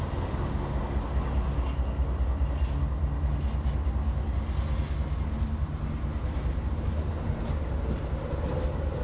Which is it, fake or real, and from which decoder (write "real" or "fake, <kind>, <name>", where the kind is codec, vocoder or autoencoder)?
real